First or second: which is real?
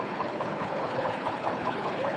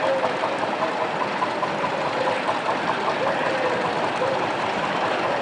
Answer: second